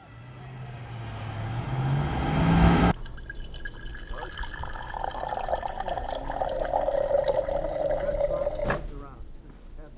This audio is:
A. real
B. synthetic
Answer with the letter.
A